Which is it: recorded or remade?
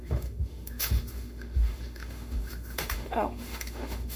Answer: remade